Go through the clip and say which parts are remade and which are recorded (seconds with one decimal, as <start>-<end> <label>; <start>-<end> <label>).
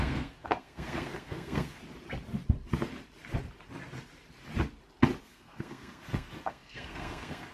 0.0-1.8 remade; 1.8-5.2 recorded; 5.2-7.5 remade